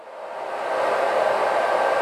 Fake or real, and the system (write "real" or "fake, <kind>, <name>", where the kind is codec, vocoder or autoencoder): real